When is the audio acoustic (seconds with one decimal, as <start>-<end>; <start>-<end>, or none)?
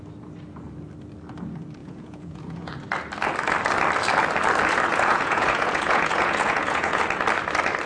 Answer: 0.0-1.8; 2.7-4.9; 7.0-7.9